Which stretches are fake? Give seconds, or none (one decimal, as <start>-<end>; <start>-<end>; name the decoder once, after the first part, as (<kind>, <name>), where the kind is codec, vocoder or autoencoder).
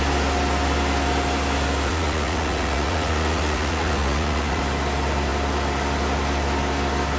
1.9-4.6 (vocoder, Vocos)